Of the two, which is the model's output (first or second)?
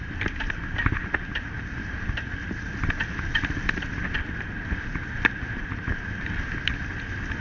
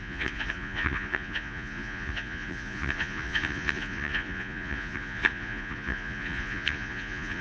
second